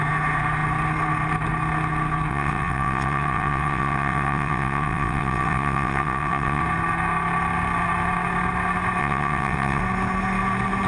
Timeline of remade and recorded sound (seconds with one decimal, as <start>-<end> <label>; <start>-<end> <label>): 0.0-2.3 recorded; 2.3-6.6 remade; 6.6-9.0 recorded; 9.0-9.8 remade; 9.8-10.9 recorded